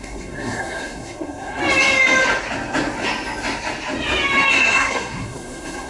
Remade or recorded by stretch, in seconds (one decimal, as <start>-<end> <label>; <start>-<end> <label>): 0.0-1.6 remade; 1.6-4.5 recorded; 4.5-5.9 remade